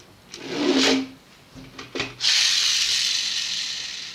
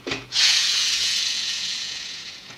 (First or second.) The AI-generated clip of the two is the second